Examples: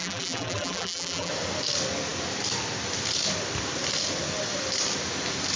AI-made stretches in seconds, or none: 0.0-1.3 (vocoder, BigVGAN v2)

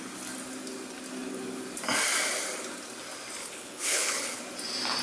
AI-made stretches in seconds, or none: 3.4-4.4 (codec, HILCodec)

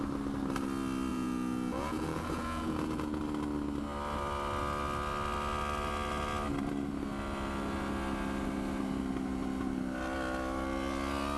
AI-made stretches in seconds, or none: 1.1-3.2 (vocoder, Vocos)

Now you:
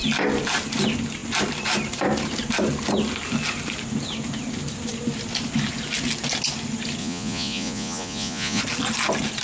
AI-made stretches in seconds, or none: 7.0-8.6 (vocoder, Vocos)

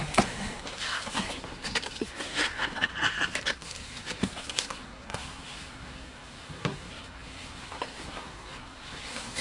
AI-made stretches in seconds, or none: 0.0-2.9 (codec, SNAC); 3.4-9.4

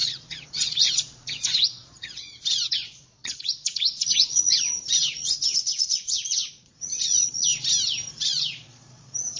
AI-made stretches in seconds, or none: 0.0-7.5 (vocoder, Vocos); 8.1-9.4

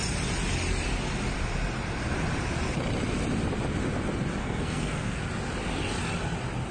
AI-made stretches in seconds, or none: 4.4-5.2 (codec, SNAC)